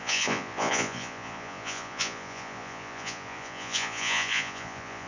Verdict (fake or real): fake